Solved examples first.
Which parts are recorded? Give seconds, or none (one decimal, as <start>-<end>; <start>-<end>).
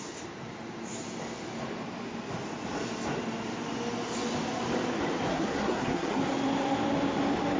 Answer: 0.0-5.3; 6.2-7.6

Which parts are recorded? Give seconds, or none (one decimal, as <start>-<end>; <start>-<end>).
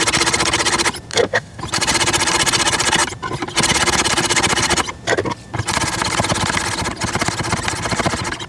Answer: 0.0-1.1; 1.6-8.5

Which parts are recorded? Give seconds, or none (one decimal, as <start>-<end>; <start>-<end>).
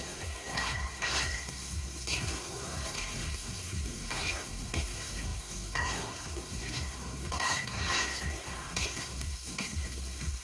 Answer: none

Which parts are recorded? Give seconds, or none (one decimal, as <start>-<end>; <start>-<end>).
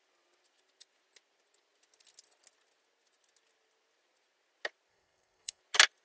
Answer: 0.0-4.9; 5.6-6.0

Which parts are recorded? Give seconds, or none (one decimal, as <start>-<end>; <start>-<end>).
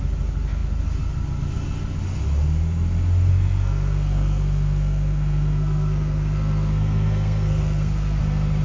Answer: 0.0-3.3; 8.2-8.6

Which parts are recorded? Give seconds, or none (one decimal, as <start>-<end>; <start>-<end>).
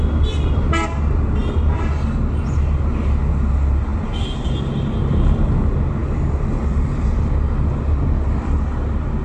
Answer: 0.0-9.2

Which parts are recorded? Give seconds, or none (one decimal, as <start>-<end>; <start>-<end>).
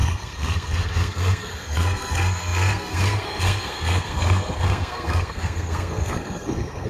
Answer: none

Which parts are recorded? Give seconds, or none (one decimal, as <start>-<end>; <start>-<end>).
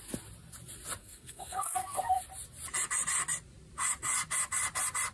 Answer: 0.0-1.0; 2.2-5.1